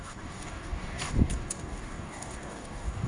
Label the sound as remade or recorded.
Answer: remade